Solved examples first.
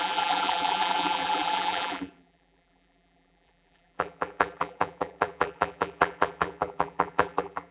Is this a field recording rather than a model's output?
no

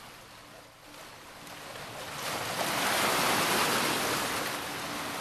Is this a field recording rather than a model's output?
yes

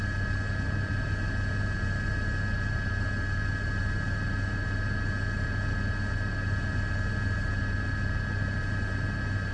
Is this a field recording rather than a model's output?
yes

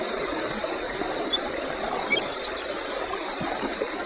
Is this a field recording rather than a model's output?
no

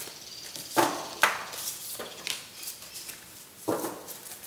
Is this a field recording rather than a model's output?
yes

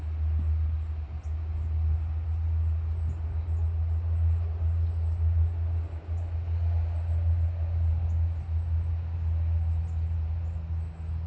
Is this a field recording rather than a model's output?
yes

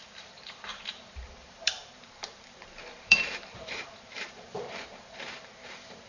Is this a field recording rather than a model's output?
no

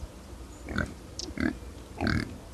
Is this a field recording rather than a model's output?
no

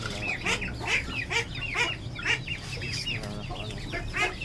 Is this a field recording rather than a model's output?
yes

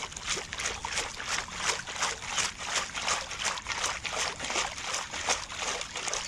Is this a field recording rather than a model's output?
yes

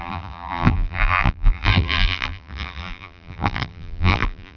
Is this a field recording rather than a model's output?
no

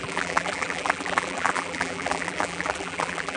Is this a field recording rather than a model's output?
no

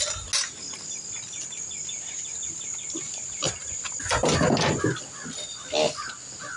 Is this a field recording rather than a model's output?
yes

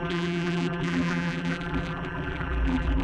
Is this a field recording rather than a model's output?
no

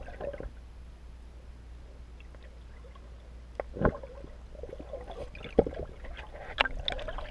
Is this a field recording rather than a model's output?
yes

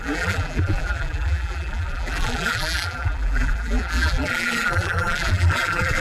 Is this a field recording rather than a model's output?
no